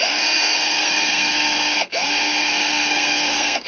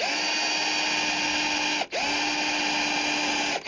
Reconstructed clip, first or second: first